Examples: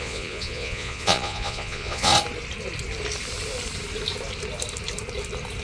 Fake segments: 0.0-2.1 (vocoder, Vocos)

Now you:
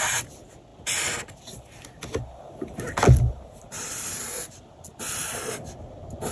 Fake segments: none

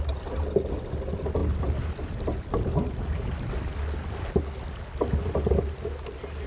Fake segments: none

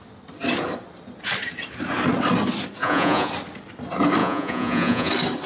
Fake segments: 2.8-3.3 (vocoder, Vocos); 4.2-5.1

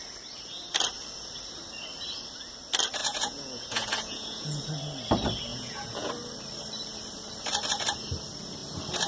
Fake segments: 3.0-4.7 (vocoder, Vocos); 5.5-6.1

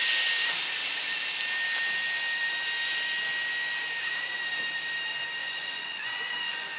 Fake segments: 5.4-6.8 (vocoder, Vocos)

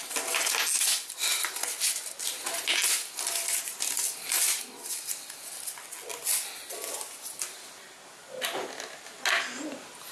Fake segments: none